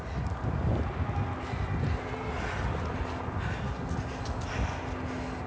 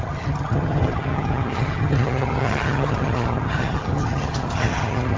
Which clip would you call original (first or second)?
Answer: first